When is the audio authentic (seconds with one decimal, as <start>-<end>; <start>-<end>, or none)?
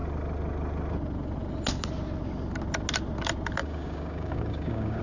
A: 0.0-3.6